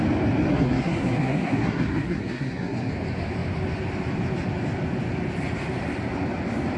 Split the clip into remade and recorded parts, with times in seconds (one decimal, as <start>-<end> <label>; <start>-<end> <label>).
0.0-0.5 recorded; 0.5-2.9 remade; 2.9-6.8 recorded